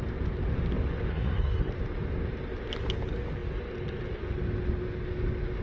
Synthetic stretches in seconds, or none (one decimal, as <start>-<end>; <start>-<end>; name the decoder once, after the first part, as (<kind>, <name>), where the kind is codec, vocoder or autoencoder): 1.1-1.7 (codec, SNAC)